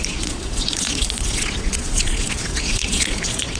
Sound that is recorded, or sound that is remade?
remade